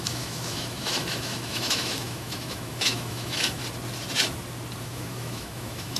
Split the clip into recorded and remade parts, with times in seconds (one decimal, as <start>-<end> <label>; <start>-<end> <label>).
0.0-3.6 remade; 3.6-4.8 recorded; 4.8-6.0 remade